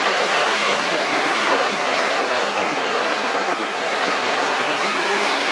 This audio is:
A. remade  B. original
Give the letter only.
A